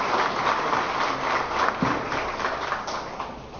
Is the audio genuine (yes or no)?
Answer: yes